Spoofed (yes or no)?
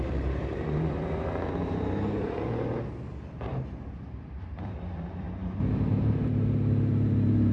yes